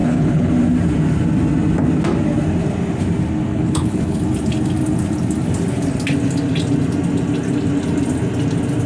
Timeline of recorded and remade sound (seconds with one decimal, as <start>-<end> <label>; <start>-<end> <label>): 0.0-0.5 remade; 0.5-3.5 recorded; 3.5-4.2 remade; 4.2-8.9 recorded